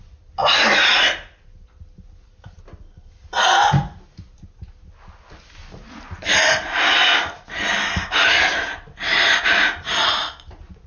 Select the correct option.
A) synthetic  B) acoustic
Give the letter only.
B